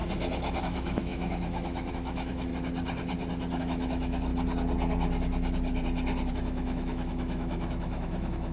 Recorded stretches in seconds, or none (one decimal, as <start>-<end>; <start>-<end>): 0.0-0.6; 2.5-3.6; 4.3-6.3